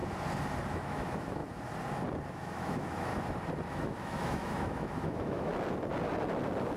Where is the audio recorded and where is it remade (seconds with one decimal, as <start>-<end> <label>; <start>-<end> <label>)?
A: 0.0-0.7 recorded; 0.7-1.4 remade; 1.4-2.3 recorded; 2.3-3.1 remade; 3.1-3.7 recorded; 3.7-5.5 remade; 5.5-6.8 recorded